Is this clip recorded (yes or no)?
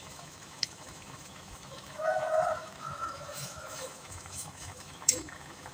no